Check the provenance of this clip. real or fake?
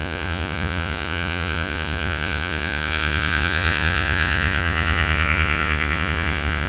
fake